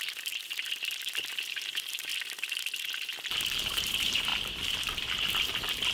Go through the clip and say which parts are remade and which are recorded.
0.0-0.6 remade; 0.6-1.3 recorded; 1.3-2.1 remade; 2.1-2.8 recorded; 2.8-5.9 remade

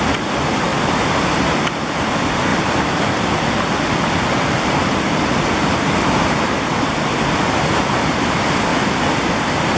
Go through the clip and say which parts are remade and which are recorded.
0.0-2.5 recorded; 2.5-7.5 remade; 7.5-8.7 recorded; 8.7-9.3 remade; 9.3-9.8 recorded

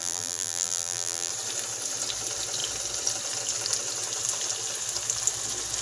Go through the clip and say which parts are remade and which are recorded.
0.0-1.3 remade; 1.3-5.8 recorded

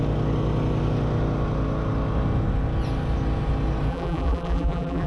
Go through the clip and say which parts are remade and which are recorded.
0.0-3.9 recorded; 3.9-5.1 remade

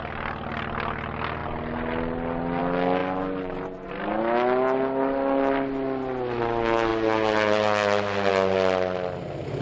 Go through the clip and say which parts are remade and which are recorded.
0.0-9.6 recorded

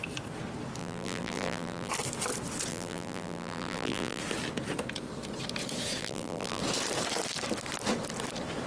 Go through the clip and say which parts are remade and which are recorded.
0.0-0.8 recorded; 0.8-1.9 remade; 1.9-2.7 recorded; 2.7-4.2 remade; 4.2-6.0 recorded; 6.0-6.6 remade; 6.6-8.7 recorded

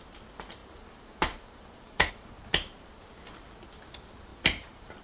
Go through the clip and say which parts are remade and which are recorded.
0.0-0.6 recorded; 0.6-2.1 remade; 2.1-4.3 recorded; 4.3-5.0 remade

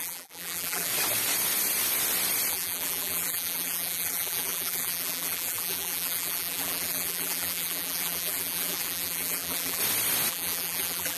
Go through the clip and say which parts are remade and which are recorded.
0.0-0.9 remade; 0.9-2.5 recorded; 2.5-9.8 remade; 9.8-10.3 recorded; 10.3-11.2 remade